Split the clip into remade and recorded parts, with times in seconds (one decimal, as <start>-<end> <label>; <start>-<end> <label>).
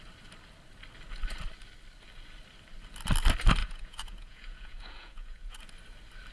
0.0-3.6 recorded; 3.6-5.6 remade; 5.6-6.3 recorded